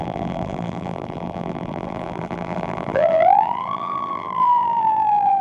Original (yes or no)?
no